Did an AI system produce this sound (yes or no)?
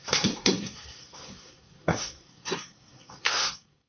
yes